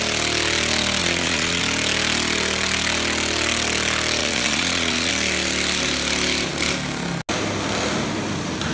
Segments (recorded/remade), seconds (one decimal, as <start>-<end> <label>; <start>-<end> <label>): 0.0-1.0 recorded; 1.0-1.6 remade; 1.6-4.2 recorded; 4.2-5.1 remade; 5.1-8.7 recorded